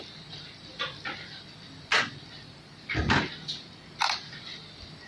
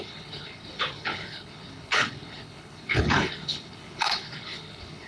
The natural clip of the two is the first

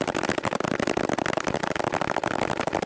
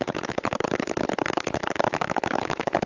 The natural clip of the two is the first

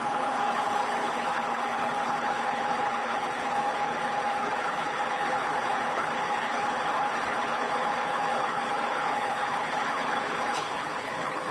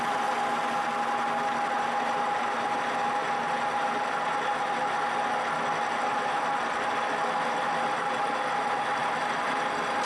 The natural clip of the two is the second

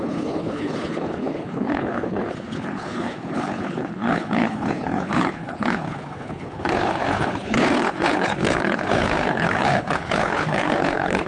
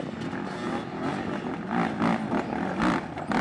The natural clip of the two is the second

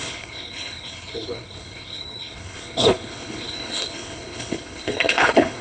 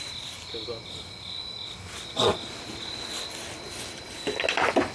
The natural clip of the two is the second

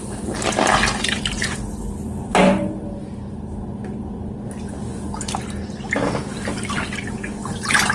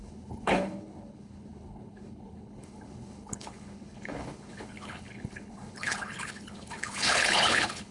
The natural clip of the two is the first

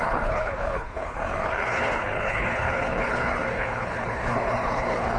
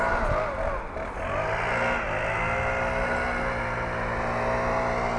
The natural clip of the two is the second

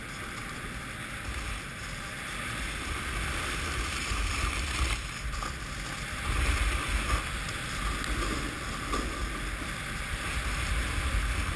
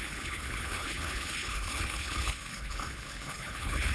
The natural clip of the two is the first